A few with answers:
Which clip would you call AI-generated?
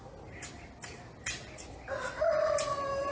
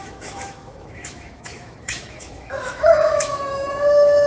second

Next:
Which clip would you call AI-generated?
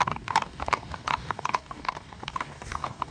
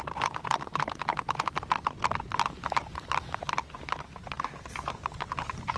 first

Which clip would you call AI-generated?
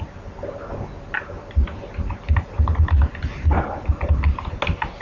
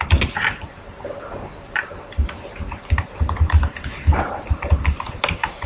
second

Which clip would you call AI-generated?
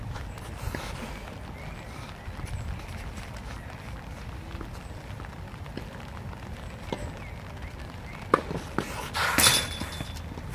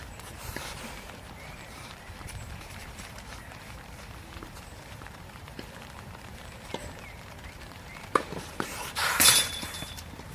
second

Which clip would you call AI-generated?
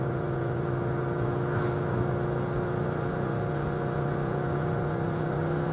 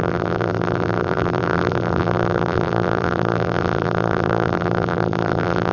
second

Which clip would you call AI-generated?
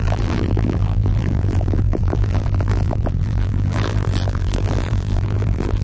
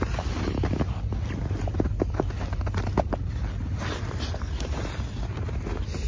first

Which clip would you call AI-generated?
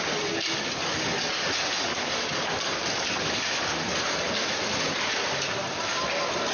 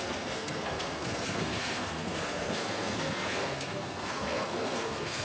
second